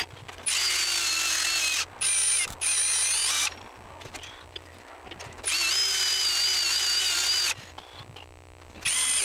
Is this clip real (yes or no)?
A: yes